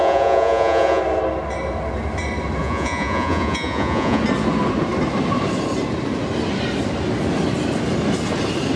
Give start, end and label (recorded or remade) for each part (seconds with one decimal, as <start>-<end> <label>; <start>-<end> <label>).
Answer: 0.0-1.0 remade; 1.0-2.6 recorded; 2.6-4.2 remade; 4.2-8.8 recorded